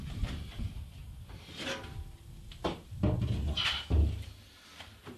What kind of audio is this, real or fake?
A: real